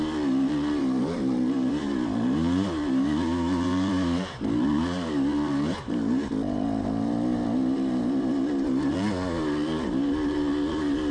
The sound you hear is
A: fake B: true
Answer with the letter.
A